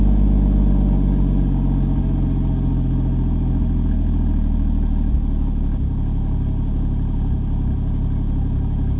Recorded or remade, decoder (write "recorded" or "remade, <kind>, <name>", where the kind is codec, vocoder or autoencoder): recorded